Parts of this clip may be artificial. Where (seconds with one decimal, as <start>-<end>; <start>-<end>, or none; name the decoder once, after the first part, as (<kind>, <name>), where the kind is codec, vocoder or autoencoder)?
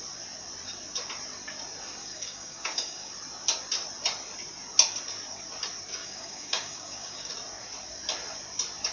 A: 2.0-3.1 (codec, DAC); 6.0-7.3